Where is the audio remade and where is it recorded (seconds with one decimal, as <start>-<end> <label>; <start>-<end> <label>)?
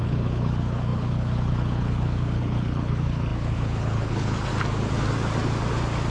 0.0-4.5 remade; 4.5-6.1 recorded